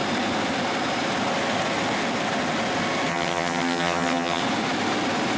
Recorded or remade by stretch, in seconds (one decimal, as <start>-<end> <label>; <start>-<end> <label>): 0.0-3.1 recorded; 3.1-4.4 remade; 4.4-5.4 recorded